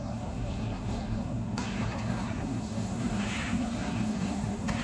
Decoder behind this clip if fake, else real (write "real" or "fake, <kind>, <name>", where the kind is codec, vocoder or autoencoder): fake, codec, SNAC